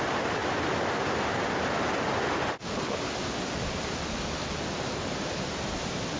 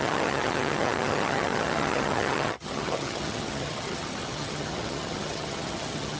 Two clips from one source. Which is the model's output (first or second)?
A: second